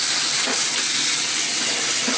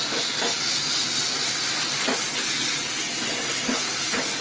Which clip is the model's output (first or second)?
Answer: first